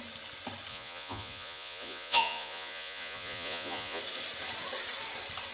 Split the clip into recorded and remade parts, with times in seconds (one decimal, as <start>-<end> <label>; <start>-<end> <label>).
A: 0.0-0.7 recorded; 0.7-4.0 remade; 4.0-5.5 recorded